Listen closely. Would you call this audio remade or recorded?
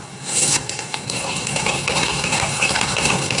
remade